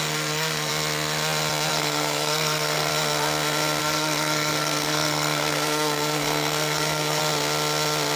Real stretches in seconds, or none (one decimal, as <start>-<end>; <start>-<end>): 0.7-1.7; 2.9-3.8; 7.2-8.2